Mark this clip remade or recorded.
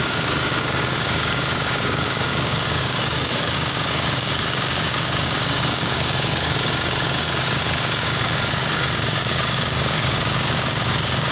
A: remade